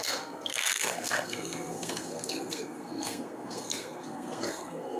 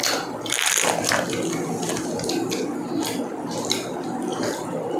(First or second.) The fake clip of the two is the first